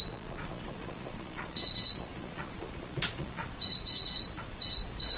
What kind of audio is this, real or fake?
fake